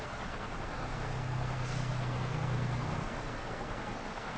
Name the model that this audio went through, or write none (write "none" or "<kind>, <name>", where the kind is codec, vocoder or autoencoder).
codec, SNAC